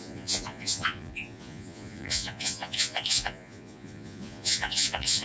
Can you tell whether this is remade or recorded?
remade